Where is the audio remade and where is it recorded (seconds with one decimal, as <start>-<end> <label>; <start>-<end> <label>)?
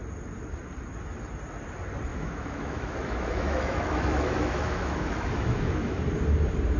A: 0.0-2.1 recorded; 2.1-6.0 remade; 6.0-6.8 recorded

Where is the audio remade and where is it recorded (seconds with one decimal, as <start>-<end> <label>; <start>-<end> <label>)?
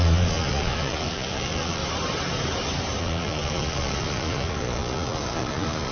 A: 0.0-1.8 remade; 1.8-3.0 recorded; 3.0-5.9 remade